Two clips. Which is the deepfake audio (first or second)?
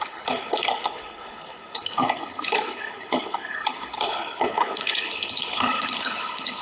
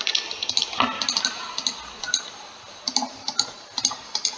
first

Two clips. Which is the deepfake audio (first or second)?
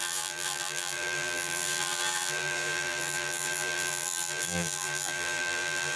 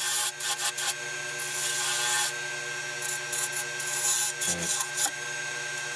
first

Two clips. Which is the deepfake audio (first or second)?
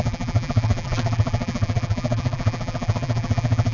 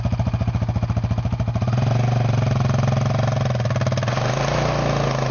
first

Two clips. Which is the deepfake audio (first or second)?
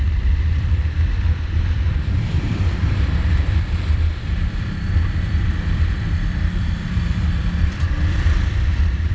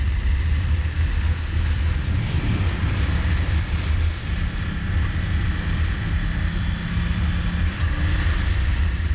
first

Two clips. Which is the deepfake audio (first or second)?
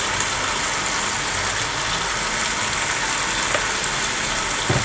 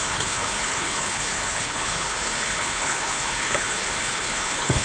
second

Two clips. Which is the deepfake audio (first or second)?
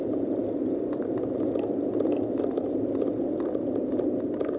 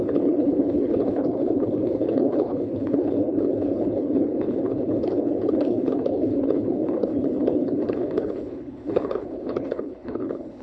second